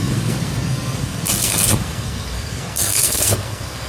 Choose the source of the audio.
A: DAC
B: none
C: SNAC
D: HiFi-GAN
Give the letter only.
C